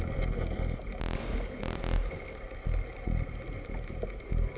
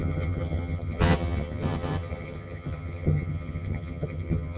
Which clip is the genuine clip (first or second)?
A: first